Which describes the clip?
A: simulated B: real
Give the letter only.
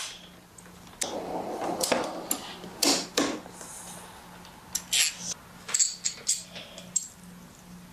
B